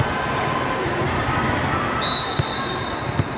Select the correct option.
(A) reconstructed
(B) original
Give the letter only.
B